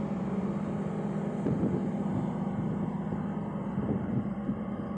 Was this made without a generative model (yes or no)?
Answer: yes